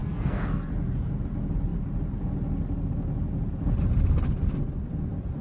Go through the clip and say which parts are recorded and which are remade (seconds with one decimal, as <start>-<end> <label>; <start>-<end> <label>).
0.0-0.7 remade; 0.7-5.4 recorded